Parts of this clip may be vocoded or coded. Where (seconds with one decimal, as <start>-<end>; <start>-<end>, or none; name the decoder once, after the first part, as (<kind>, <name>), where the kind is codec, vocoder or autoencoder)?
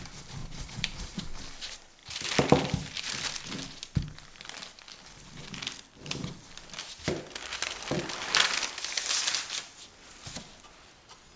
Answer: 0.4-1.2 (vocoder, Vocos)